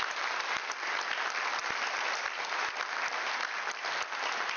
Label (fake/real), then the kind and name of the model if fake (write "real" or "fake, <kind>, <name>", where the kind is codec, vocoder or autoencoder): fake, vocoder, BigVGAN v2